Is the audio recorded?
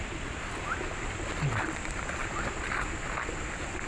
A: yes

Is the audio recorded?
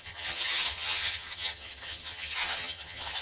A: no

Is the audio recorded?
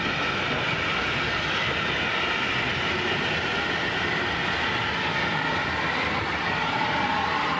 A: yes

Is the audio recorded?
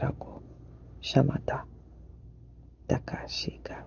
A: yes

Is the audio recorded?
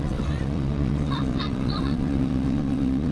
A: no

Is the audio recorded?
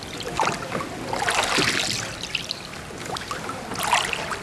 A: yes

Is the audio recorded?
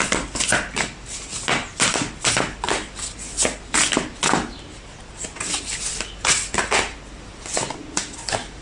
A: yes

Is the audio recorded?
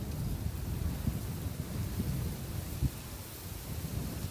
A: yes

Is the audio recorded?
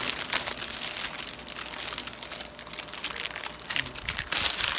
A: yes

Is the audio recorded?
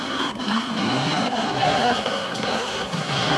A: no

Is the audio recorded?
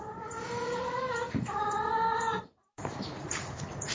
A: no